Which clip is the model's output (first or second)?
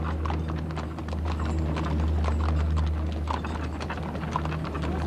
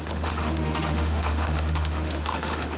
second